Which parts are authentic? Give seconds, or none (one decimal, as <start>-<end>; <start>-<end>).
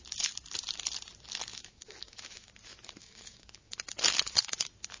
0.0-1.5; 2.5-3.0; 3.7-5.0